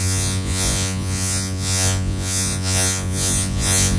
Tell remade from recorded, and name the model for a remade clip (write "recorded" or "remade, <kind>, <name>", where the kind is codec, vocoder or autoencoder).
remade, vocoder, Vocos